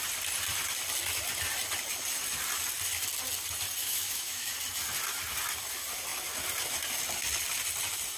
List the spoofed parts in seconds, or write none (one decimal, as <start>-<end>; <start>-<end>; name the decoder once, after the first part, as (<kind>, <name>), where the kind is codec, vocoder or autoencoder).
3.8-4.5 (autoencoder, DAC-VAE)